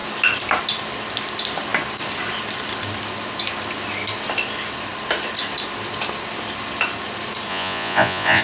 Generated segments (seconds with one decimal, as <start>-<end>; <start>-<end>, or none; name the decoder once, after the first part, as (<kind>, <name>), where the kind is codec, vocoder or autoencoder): 7.5-8.4 (vocoder, Vocos)

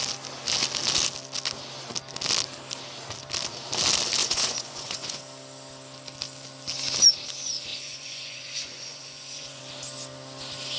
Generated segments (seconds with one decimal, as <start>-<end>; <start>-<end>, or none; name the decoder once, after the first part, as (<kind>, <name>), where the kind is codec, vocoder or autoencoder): 4.2-5.2 (vocoder, Vocos); 7.7-9.6

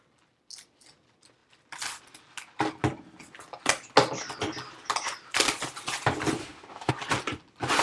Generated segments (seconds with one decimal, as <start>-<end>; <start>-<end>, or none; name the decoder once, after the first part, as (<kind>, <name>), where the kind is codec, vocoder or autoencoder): 6.4-6.9 (autoencoder, DAC-VAE)

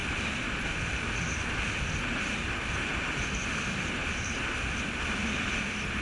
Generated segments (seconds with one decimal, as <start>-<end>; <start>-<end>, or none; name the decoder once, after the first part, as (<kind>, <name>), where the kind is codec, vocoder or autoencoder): 4.0-6.0 (vocoder, BigVGAN v2)

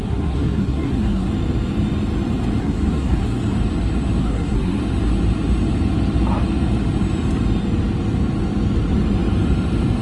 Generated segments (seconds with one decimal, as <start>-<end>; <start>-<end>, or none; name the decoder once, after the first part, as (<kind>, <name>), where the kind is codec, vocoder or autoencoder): 0.0-1.3 (codec, SNAC); 2.6-3.4; 4.2-4.8

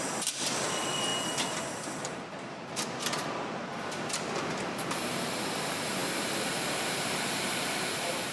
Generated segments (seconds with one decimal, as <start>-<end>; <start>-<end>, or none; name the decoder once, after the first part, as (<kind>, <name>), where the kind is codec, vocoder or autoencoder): 0.0-1.1 (vocoder, BigVGAN v2); 2.0-8.3

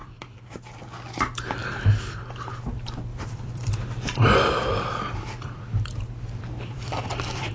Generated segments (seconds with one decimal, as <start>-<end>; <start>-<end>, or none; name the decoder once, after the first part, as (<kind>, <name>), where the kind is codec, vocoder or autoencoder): 0.0-0.5 (vocoder, BigVGAN v2); 3.1-7.5